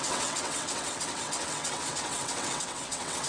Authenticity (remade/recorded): remade